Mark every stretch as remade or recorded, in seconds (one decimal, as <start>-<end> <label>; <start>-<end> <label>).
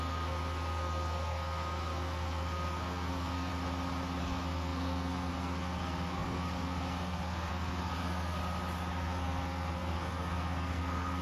0.0-3.5 remade; 3.5-4.2 recorded; 4.2-8.4 remade; 8.4-9.0 recorded; 9.0-11.2 remade